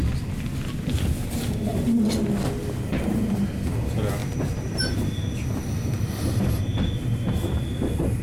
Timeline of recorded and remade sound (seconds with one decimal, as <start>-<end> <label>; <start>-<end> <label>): 0.0-2.9 recorded; 2.9-3.4 remade; 3.4-4.2 recorded; 4.2-5.1 remade; 5.1-8.2 recorded